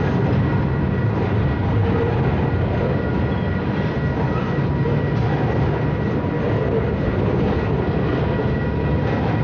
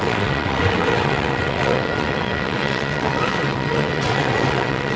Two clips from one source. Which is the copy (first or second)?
second